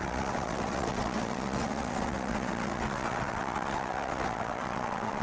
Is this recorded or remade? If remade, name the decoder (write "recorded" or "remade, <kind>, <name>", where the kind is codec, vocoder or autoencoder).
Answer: remade, vocoder, WaveNeXt